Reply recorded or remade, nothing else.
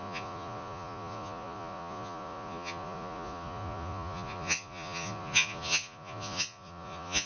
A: remade